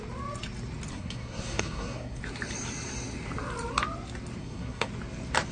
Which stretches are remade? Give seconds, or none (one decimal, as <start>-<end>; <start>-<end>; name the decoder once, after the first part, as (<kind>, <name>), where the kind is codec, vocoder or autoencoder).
0.9-2.2 (codec, SNAC); 4.4-4.9